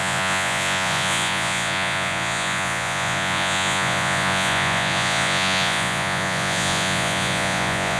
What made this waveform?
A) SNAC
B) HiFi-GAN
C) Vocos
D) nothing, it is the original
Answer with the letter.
C